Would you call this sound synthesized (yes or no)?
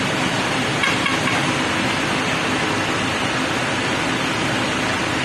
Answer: no